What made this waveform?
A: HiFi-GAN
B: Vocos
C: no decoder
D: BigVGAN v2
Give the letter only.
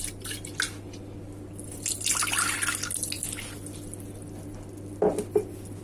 C